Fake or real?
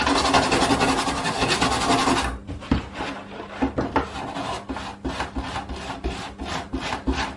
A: real